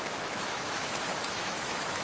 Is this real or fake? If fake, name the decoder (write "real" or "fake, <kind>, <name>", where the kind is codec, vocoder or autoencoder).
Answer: fake, autoencoder, DAC-VAE